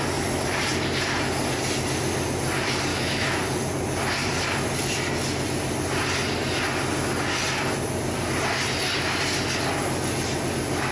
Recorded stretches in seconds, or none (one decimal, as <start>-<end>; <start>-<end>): 0.0-2.9; 3.4-10.9